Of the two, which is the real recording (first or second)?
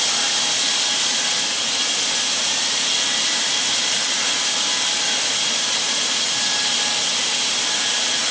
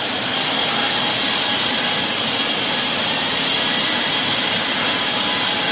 first